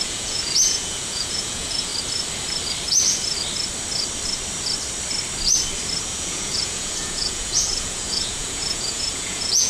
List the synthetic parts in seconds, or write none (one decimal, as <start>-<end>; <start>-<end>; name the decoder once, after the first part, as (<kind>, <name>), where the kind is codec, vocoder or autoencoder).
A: 0.0-1.9 (vocoder, Vocos); 6.1-9.7